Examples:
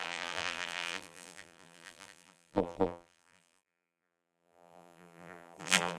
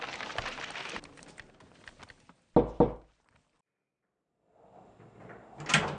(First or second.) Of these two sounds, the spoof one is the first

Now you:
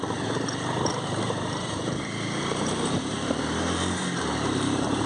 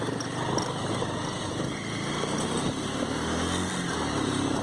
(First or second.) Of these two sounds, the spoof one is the first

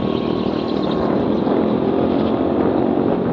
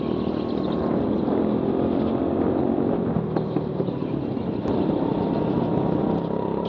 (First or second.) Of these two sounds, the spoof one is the first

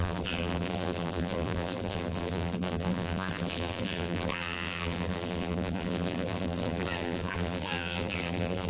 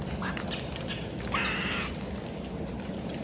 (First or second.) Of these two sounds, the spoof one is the first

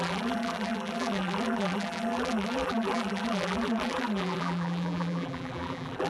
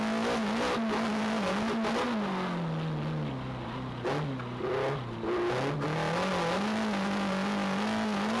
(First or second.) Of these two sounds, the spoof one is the first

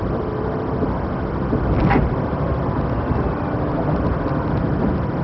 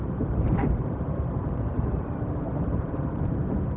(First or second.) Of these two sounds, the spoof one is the second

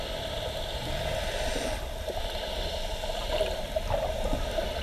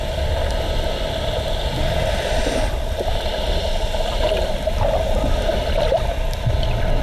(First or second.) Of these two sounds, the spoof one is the second